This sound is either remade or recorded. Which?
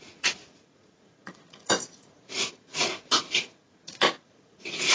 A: remade